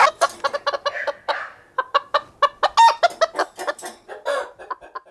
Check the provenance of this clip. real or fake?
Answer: real